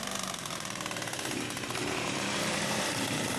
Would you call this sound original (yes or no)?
no